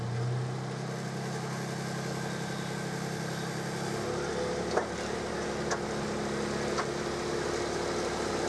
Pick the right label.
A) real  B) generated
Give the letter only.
A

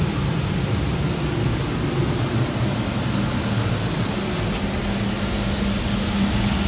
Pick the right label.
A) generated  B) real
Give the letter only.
B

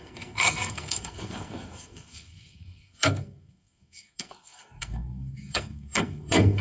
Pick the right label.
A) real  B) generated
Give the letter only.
B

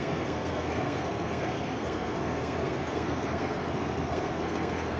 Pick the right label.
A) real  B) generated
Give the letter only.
B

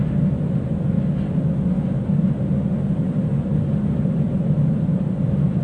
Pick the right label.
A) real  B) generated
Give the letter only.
A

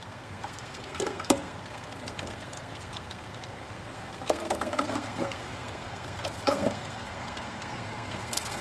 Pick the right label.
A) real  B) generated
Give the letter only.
B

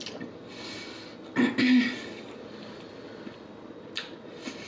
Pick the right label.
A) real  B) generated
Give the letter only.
A